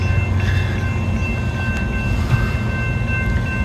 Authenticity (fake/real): real